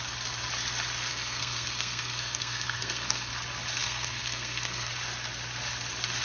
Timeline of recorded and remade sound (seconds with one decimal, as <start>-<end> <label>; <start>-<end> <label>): 0.0-1.1 recorded; 1.1-3.3 remade; 3.3-3.8 recorded; 3.8-4.9 remade; 4.9-6.2 recorded